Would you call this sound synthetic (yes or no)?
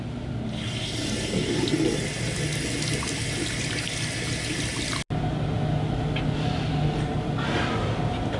no